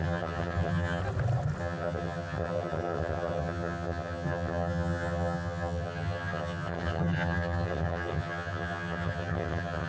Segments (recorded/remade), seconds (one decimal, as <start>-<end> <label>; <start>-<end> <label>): 0.0-1.0 remade; 1.0-1.6 recorded; 1.6-9.9 remade